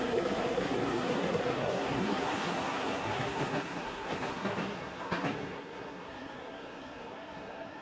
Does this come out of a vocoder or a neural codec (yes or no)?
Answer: yes